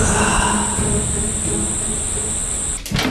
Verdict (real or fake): real